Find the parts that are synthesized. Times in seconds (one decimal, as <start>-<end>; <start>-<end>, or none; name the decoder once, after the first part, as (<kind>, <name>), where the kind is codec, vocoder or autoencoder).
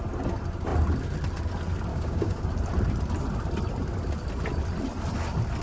1.9-2.4 (codec, DAC)